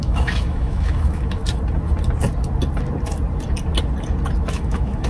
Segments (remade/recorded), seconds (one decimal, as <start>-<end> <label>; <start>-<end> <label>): 0.0-1.4 remade; 1.4-4.5 recorded; 4.5-5.1 remade